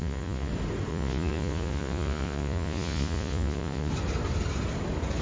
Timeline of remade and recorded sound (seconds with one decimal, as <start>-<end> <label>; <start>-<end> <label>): 0.0-0.5 remade; 0.5-0.9 recorded; 0.9-3.9 remade; 3.9-5.2 recorded